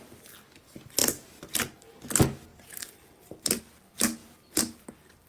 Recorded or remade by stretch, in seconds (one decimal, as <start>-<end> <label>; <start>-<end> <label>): 0.0-1.0 recorded; 1.0-1.8 remade; 1.8-2.5 recorded; 2.5-3.6 remade; 3.6-5.3 recorded